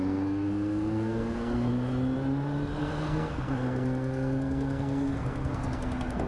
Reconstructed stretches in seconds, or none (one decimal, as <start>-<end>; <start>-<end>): 0.0-1.7; 2.8-6.3